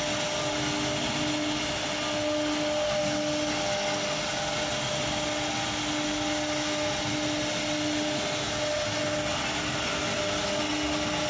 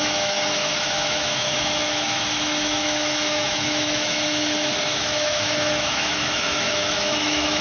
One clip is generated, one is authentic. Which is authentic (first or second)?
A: first